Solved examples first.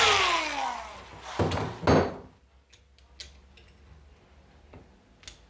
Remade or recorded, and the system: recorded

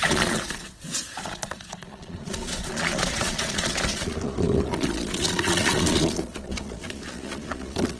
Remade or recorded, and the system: remade, vocoder, Vocos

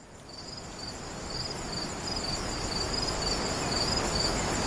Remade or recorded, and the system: recorded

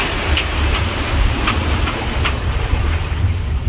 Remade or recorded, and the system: remade, vocoder, BigVGAN v2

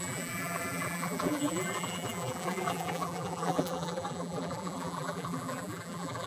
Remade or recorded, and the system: remade, vocoder, BigVGAN v2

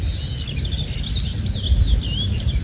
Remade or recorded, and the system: recorded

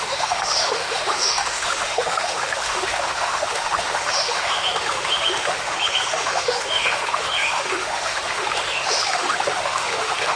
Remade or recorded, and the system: remade, autoencoder, DAC-VAE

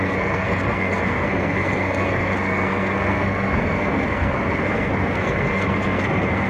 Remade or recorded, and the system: remade, codec, SNAC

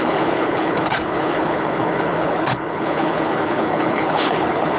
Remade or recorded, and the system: remade, codec, HILCodec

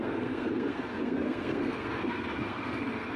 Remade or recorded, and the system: remade, codec, SNAC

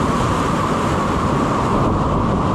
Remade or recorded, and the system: recorded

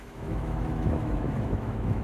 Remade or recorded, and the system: remade, autoencoder, DAC-VAE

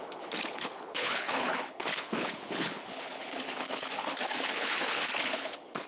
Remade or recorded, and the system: remade, codec, HILCodec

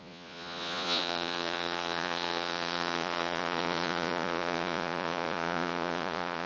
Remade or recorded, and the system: remade, vocoder, Vocos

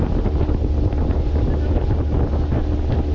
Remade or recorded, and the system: recorded